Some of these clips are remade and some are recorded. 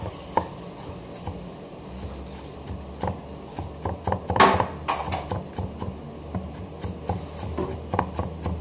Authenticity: recorded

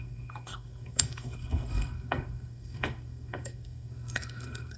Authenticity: remade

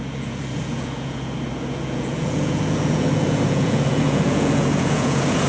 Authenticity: remade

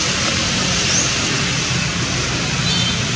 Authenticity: recorded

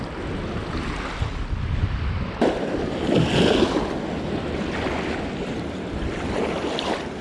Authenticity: recorded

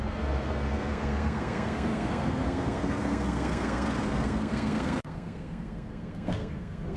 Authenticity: remade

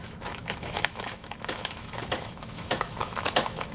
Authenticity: remade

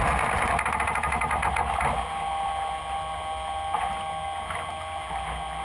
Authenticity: recorded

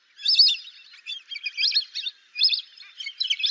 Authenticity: recorded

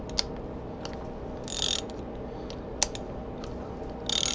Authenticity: recorded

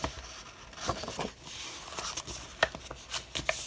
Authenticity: recorded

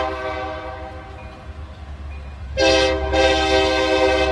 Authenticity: recorded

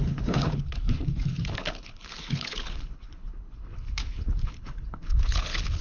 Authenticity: remade